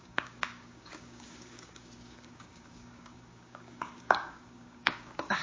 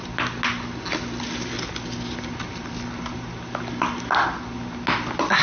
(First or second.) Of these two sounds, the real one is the second